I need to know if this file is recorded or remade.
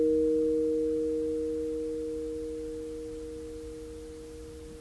recorded